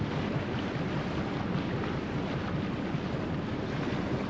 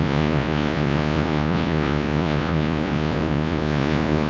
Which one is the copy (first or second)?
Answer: second